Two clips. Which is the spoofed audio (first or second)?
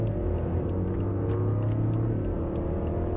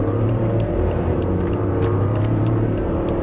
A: second